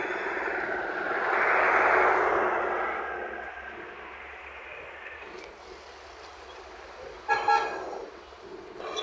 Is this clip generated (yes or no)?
no